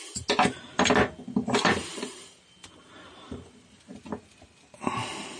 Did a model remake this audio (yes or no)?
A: no